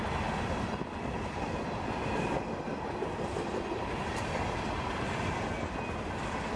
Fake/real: real